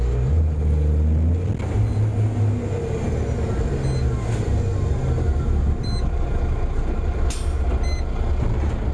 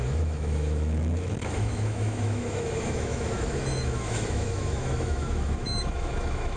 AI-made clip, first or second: second